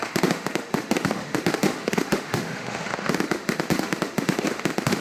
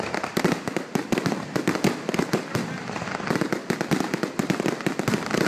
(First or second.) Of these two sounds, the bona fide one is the second